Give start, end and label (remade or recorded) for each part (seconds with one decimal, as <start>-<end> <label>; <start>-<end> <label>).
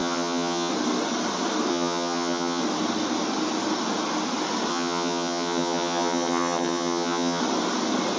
0.0-0.7 remade; 0.7-1.7 recorded; 1.7-2.6 remade; 2.6-4.7 recorded; 4.7-7.4 remade; 7.4-8.2 recorded